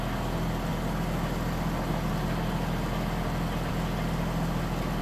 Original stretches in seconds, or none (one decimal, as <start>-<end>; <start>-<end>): 0.0-5.0